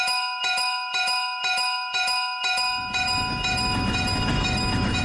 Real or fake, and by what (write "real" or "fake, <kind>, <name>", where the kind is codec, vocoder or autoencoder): fake, autoencoder, DAC-VAE